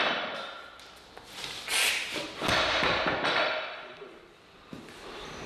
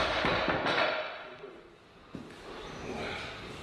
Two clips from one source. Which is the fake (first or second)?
first